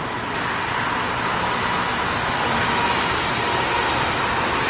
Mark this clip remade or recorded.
recorded